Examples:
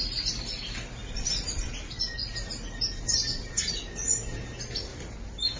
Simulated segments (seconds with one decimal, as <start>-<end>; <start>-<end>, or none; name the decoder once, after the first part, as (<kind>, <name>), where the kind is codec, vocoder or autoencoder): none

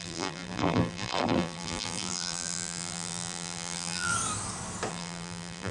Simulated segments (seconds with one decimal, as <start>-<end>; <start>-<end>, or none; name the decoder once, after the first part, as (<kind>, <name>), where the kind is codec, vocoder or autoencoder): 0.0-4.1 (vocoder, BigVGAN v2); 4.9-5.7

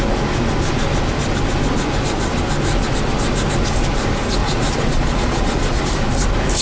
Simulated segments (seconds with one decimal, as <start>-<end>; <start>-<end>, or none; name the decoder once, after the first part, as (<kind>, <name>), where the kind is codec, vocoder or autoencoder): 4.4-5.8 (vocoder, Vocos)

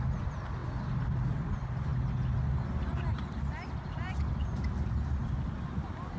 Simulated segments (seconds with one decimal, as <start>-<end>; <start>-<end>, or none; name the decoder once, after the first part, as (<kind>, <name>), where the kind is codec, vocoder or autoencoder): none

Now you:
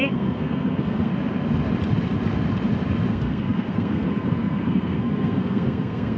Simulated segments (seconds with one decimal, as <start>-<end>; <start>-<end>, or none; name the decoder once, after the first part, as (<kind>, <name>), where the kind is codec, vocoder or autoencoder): 0.0-1.1 (codec, SNAC); 3.1-6.2

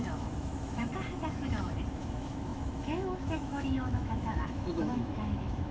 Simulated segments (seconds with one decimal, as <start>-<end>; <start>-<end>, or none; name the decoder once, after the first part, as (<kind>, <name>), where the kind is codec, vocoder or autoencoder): 0.0-0.9 (autoencoder, DAC-VAE); 1.9-5.7